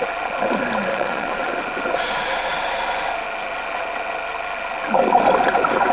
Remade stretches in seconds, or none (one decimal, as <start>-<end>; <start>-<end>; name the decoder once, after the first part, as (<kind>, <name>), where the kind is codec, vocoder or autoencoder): 0.9-1.5 (vocoder, Vocos)